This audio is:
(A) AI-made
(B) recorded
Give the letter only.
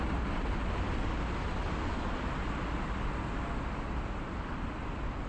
B